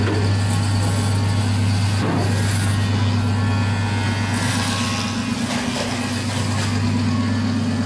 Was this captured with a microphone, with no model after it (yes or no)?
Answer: yes